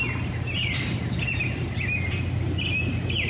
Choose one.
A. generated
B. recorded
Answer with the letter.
B